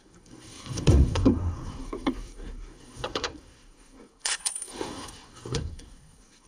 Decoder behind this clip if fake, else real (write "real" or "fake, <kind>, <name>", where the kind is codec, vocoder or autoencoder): fake, codec, SNAC